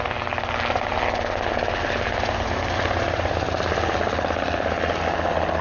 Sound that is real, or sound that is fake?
real